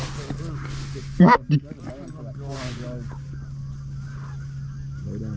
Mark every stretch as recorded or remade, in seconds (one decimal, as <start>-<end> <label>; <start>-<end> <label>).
0.0-5.4 recorded

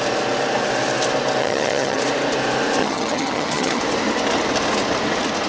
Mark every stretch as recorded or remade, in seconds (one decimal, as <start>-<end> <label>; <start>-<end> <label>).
0.0-1.4 recorded; 1.4-2.0 remade; 2.0-2.8 recorded; 2.8-3.8 remade; 3.8-5.5 recorded

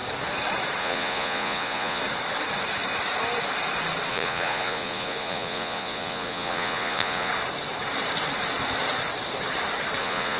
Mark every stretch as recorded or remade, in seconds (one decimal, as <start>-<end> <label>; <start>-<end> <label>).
0.0-0.8 recorded; 0.8-2.0 remade; 2.0-4.1 recorded; 4.1-7.3 remade; 7.3-10.0 recorded; 10.0-10.4 remade

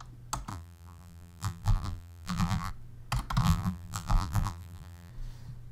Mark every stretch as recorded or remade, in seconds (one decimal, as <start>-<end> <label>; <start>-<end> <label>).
0.0-0.5 recorded; 0.5-2.7 remade; 2.7-3.4 recorded; 3.4-5.1 remade; 5.1-5.7 recorded

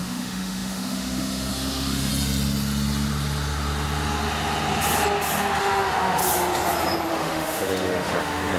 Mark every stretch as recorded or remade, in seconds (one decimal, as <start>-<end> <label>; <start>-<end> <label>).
0.0-2.1 remade; 2.1-5.6 recorded; 5.6-6.2 remade; 6.2-7.1 recorded; 7.1-8.6 remade

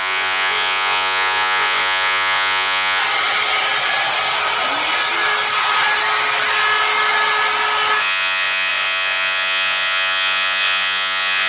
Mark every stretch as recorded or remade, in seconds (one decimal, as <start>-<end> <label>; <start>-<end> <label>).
0.0-3.0 remade; 3.0-8.0 recorded; 8.0-11.5 remade

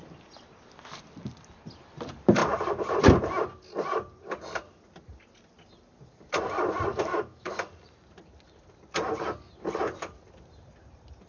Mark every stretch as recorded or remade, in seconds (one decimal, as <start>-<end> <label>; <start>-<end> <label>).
0.0-6.9 recorded; 6.9-7.7 remade; 7.7-11.3 recorded

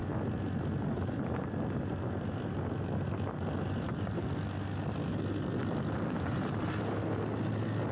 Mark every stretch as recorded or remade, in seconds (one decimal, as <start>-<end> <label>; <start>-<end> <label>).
0.0-5.6 recorded; 5.6-6.8 remade; 6.8-7.9 recorded